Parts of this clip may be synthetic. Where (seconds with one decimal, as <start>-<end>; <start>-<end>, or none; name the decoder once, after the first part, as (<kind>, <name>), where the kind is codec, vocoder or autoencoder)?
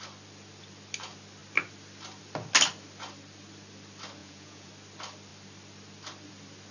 4.2-4.7 (vocoder, Vocos)